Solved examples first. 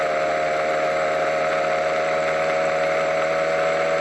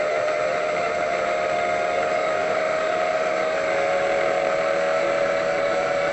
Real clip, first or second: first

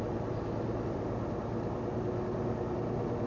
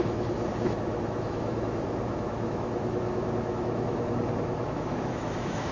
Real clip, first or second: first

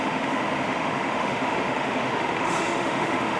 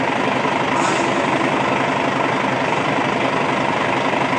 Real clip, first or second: second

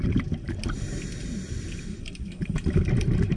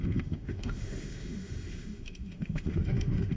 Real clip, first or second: first